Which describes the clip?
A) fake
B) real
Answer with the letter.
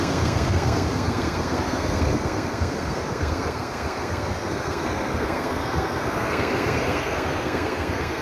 A